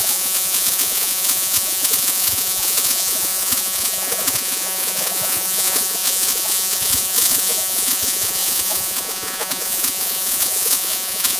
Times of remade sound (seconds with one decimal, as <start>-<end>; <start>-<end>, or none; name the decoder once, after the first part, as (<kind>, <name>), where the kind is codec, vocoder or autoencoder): 0.0-11.4 (vocoder, Vocos)